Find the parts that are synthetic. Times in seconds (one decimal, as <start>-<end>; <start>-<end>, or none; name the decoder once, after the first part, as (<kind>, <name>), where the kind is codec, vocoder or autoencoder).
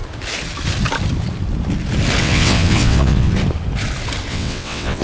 2.2-3.3 (vocoder, WaveNeXt); 4.3-5.0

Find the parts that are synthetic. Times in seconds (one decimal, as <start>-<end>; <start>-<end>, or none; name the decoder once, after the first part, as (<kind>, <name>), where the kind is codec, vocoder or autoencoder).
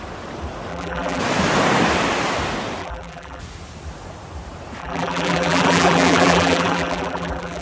0.7-1.2 (vocoder, BigVGAN v2); 2.8-3.4; 4.8-7.6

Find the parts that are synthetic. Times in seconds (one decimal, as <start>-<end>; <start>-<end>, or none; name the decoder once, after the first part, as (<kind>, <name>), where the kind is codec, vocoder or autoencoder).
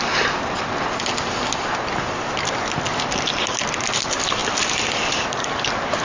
none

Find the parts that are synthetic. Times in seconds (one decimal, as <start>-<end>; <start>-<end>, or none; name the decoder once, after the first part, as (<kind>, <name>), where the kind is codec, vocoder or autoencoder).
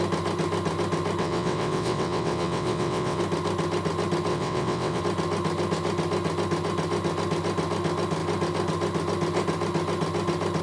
1.2-3.2 (vocoder, WaveNeXt); 4.3-5.0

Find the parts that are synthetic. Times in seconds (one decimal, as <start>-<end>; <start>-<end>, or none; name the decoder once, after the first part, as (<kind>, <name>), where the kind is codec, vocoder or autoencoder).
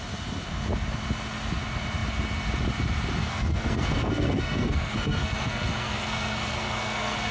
3.2-7.3 (codec, SNAC)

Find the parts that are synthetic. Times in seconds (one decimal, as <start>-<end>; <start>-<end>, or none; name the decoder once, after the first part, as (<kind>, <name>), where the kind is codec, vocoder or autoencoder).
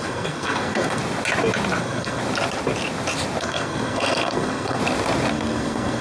0.0-1.0 (codec, SNAC); 1.8-2.2; 3.4-4.8; 5.3-6.0